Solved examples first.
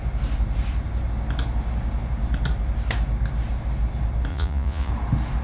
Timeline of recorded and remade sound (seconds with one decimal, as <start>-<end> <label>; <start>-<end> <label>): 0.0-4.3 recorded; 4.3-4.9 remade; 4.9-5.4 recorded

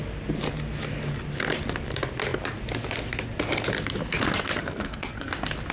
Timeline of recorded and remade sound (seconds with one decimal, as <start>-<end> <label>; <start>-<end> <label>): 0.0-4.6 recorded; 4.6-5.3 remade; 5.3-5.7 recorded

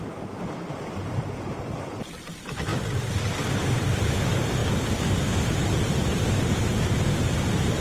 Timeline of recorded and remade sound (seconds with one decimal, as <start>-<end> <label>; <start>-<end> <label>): 0.0-7.8 recorded

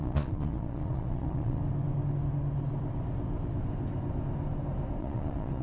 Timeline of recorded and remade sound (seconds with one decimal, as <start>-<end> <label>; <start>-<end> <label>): 0.0-1.6 remade; 1.6-5.0 recorded; 5.0-5.6 remade

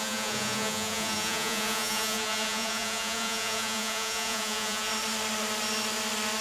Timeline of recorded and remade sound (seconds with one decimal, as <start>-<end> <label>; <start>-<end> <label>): 0.0-4.9 remade; 4.9-6.4 recorded